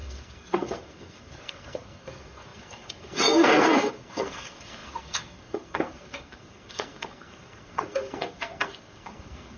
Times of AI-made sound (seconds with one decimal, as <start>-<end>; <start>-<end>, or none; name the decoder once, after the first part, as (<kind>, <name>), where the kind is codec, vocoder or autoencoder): 0.0-9.6 (codec, SNAC)